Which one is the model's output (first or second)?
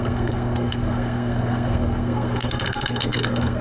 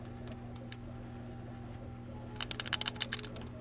first